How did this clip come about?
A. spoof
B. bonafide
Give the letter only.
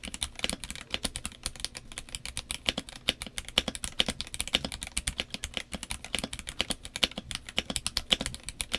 B